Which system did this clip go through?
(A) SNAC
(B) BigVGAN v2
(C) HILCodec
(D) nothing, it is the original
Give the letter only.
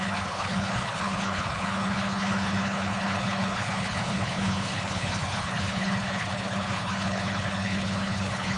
C